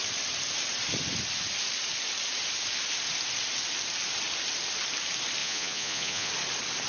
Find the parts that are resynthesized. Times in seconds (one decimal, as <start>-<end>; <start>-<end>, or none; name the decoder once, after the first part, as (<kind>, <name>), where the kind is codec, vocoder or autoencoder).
5.4-6.3 (vocoder, Vocos)